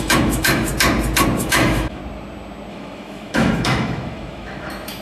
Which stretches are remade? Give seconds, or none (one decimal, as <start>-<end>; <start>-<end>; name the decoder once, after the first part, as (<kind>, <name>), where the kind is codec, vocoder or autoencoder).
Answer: 0.0-0.7 (autoencoder, DAC-VAE); 1.4-2.0; 2.7-5.0